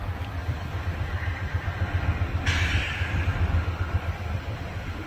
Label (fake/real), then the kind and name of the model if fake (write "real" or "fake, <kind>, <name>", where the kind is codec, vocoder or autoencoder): real